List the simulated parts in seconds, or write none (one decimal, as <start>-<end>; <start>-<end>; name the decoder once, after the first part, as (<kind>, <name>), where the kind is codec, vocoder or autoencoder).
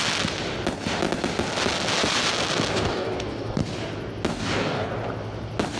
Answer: 2.7-3.6 (codec, DAC); 4.3-4.9